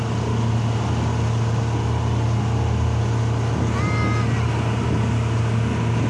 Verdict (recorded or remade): recorded